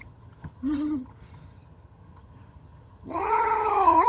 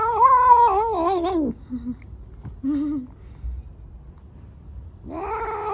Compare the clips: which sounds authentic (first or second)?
second